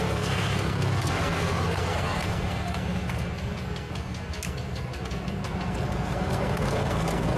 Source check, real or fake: fake